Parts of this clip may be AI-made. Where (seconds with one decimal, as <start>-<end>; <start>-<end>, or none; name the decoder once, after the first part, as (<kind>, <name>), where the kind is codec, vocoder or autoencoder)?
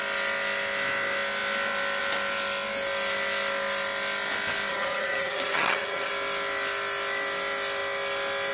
4.7-6.1 (vocoder, HiFi-GAN)